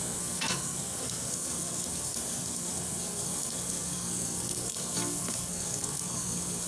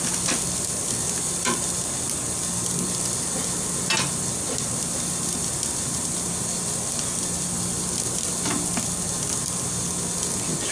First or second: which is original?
second